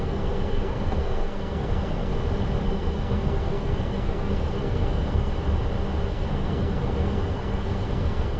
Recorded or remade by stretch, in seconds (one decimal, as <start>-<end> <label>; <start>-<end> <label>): 0.0-2.1 remade; 2.1-2.6 recorded; 2.6-5.3 remade; 5.3-6.1 recorded; 6.1-8.4 remade